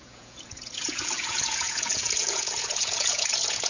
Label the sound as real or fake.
fake